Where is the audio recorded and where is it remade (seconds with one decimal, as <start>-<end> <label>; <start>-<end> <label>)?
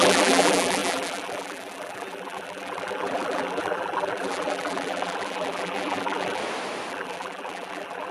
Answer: 0.0-6.4 remade; 6.4-6.9 recorded; 6.9-8.1 remade